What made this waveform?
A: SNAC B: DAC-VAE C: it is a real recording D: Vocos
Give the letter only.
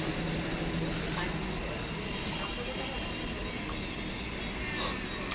C